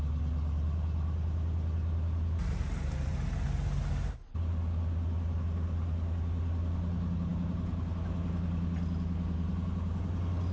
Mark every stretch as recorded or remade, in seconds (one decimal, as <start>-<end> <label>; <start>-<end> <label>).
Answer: 0.0-10.5 recorded